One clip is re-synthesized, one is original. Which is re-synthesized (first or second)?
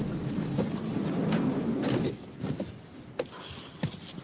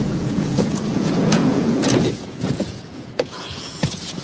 second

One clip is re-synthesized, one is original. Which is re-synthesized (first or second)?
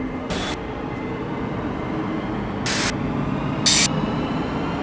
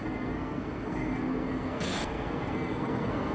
second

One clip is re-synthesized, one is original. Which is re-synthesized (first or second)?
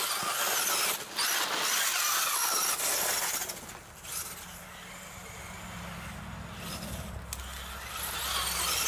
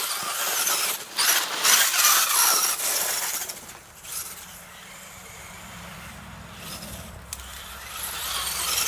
second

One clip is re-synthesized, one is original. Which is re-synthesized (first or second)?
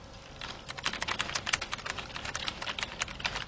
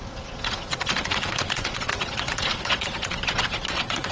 second